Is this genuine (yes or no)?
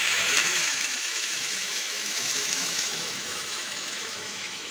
no